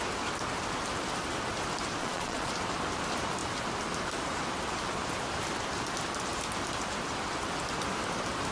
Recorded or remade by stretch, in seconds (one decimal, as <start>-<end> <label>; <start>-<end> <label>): 0.0-2.0 recorded; 2.0-2.5 remade; 2.5-8.5 recorded